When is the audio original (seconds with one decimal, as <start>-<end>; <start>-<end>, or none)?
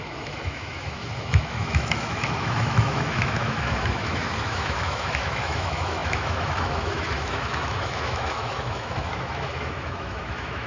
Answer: none